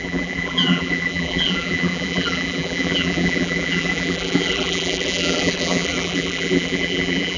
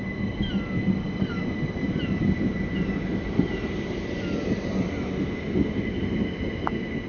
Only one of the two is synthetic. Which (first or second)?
first